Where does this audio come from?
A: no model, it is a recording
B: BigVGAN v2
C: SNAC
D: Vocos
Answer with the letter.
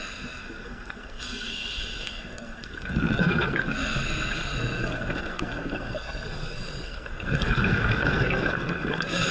C